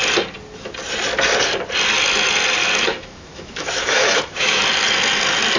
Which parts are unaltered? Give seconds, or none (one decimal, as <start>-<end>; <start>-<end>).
0.0-2.9; 4.6-5.6